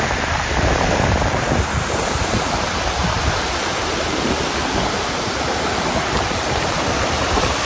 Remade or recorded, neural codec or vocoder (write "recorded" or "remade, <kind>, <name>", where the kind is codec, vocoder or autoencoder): remade, vocoder, BigVGAN v2